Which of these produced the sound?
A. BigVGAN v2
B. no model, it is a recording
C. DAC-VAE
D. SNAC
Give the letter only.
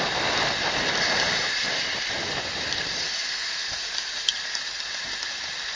A